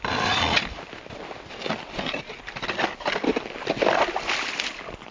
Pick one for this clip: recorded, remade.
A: recorded